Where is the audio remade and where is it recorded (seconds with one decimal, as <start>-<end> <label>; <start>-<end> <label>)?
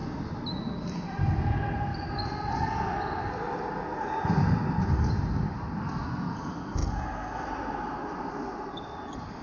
0.0-9.4 recorded